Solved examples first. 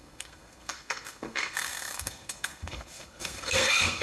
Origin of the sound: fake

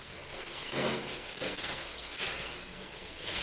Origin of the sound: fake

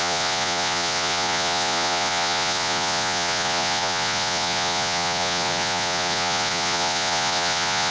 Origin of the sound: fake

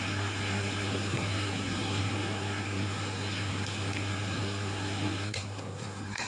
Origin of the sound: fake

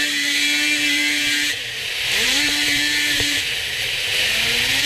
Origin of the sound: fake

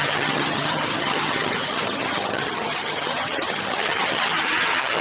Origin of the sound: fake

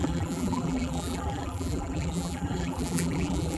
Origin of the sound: fake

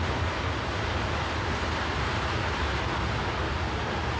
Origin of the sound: real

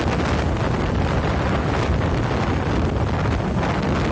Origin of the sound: real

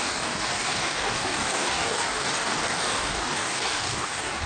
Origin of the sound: fake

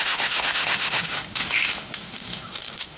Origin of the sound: fake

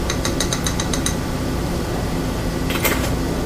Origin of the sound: fake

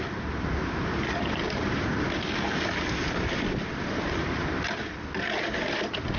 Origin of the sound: fake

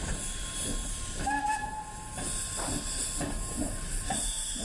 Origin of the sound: real